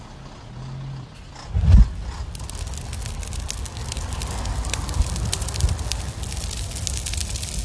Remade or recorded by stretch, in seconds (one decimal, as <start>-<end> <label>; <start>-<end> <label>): 0.0-7.6 recorded